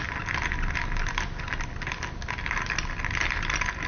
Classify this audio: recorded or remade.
recorded